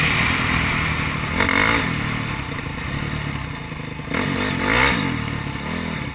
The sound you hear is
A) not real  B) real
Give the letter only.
B